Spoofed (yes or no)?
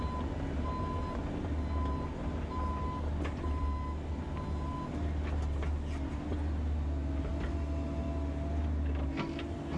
no